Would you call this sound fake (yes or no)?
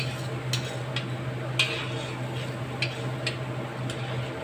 no